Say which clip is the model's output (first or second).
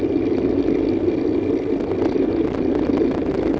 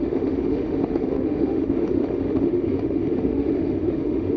second